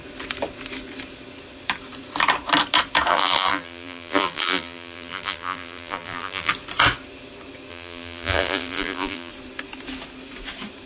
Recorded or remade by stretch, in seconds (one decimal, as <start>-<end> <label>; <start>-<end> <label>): 0.0-3.1 recorded; 3.1-6.5 remade; 6.5-7.7 recorded; 7.7-9.3 remade; 9.3-10.9 recorded